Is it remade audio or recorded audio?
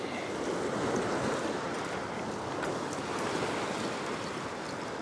recorded